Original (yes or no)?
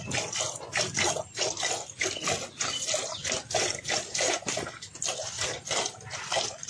yes